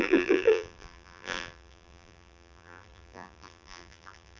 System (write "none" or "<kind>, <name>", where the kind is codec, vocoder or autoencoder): vocoder, BigVGAN v2